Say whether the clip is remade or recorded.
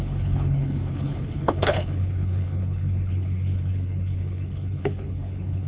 remade